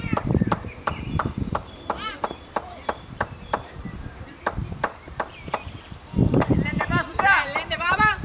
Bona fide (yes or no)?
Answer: no